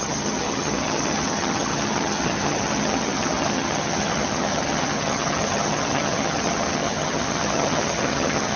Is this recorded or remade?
remade